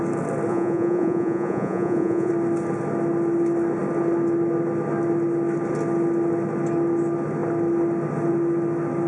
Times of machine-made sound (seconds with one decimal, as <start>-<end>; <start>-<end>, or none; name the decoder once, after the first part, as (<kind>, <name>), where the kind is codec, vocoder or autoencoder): 0.5-2.3 (vocoder, Vocos)